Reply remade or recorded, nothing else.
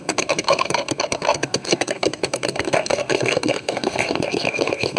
remade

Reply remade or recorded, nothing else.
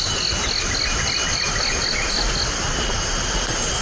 recorded